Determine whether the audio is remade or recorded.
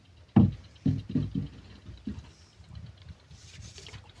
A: recorded